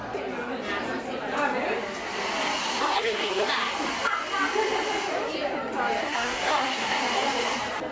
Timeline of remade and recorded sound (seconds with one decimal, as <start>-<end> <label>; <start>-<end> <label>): 0.0-2.6 recorded; 2.6-3.5 remade; 3.5-6.0 recorded; 6.0-7.0 remade; 7.0-7.9 recorded